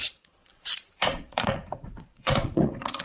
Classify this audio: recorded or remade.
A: remade